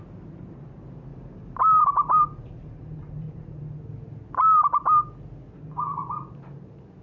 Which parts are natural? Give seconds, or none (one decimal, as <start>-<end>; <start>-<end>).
0.0-1.1; 3.6-6.0